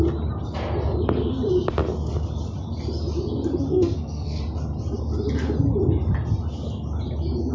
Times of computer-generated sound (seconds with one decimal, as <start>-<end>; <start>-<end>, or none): 3.7-4.4